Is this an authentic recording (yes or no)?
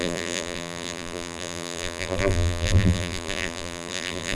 no